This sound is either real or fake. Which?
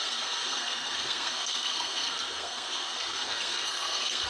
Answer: fake